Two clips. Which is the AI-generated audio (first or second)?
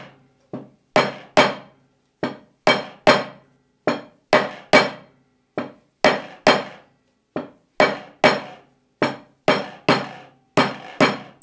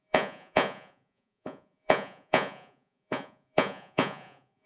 second